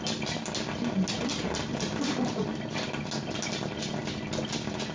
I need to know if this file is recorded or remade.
recorded